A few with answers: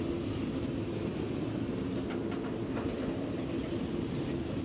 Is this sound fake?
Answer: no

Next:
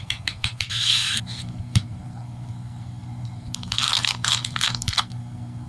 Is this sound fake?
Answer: yes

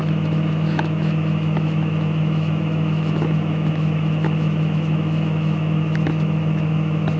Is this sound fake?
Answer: yes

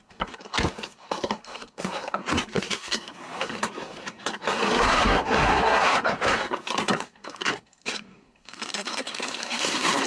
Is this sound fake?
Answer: yes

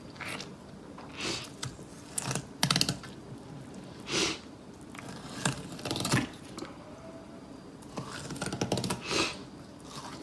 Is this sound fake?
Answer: no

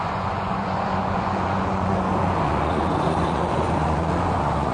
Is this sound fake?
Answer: yes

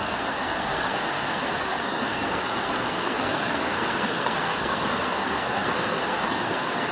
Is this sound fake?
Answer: yes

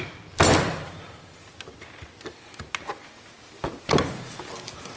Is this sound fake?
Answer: no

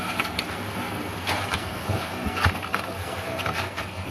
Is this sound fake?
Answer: yes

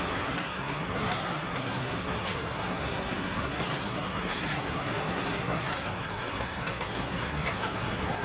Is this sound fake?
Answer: yes